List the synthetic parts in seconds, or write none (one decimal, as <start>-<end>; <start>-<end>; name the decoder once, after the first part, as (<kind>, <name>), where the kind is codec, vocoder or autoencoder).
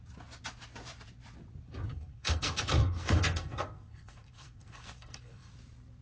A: 1.9-5.5 (codec, SNAC)